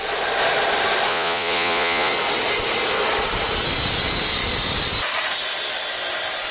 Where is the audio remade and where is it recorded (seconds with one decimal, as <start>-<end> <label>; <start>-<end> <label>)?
0.0-1.1 recorded; 1.1-2.1 remade; 2.1-6.5 recorded